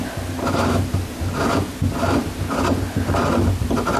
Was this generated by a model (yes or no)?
no